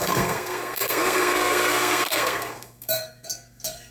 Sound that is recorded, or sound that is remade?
remade